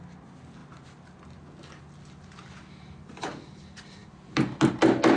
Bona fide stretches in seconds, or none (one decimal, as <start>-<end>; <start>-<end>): 0.0-5.2